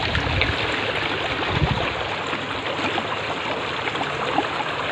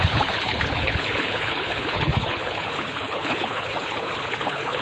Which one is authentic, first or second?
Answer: first